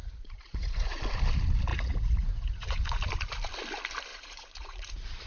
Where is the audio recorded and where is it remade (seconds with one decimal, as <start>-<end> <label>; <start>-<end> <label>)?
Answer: 0.0-1.0 remade; 1.0-1.7 recorded; 1.7-3.0 remade; 3.0-4.1 recorded; 4.1-5.3 remade